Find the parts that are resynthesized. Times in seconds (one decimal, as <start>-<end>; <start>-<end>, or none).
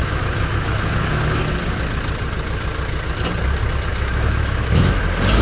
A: 0.0-1.4; 3.9-5.0